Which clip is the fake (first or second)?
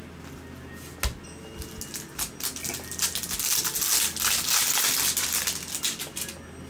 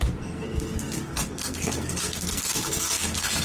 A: second